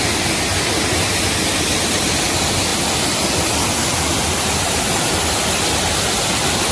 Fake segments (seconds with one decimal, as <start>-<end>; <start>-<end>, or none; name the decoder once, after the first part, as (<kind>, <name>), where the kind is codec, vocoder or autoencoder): none